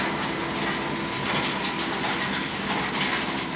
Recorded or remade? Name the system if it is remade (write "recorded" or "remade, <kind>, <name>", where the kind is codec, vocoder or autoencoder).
recorded